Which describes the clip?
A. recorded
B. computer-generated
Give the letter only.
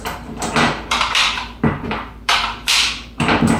B